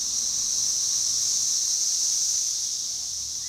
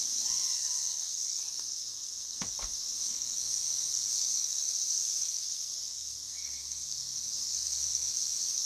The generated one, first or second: second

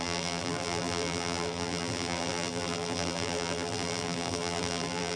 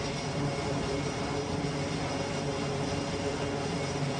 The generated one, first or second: first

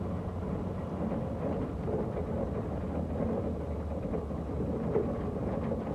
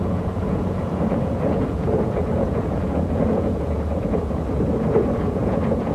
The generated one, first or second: second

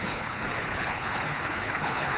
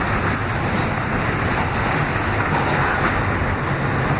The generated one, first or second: first